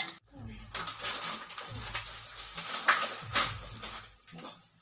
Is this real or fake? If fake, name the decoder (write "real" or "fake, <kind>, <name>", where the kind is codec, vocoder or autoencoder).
real